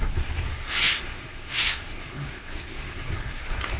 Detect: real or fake fake